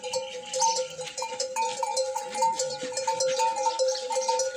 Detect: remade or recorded recorded